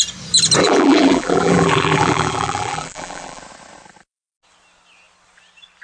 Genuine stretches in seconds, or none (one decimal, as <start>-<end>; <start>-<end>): 0.0-0.6; 3.4-5.8